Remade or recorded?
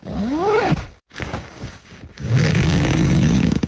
remade